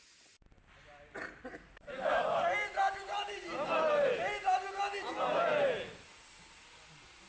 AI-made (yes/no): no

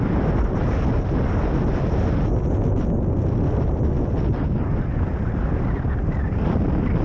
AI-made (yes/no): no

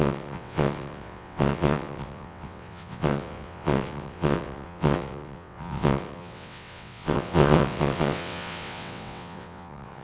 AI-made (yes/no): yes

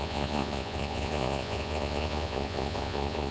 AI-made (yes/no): yes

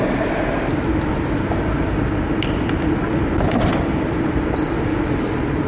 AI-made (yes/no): no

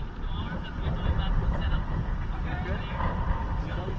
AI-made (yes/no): no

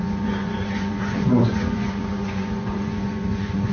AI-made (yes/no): yes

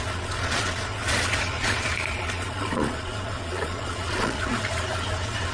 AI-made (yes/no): yes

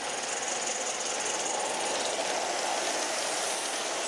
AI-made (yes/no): no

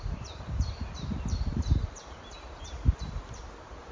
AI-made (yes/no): yes